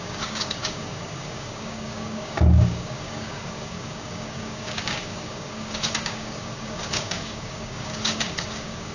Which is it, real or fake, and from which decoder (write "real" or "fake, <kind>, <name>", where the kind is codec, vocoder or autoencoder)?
fake, codec, DAC